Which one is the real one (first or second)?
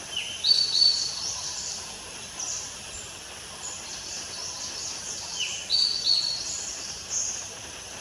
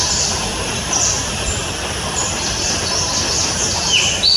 second